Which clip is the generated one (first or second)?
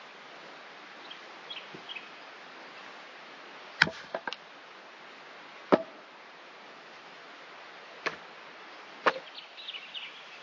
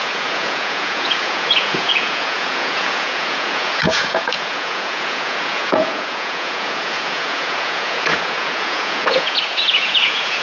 second